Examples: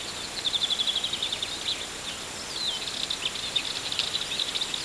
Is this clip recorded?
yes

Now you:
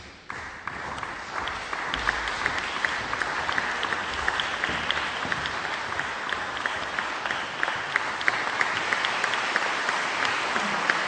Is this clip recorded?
yes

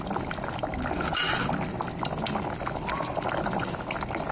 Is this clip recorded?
yes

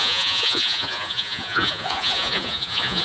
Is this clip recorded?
no